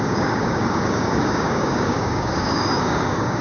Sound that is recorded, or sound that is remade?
remade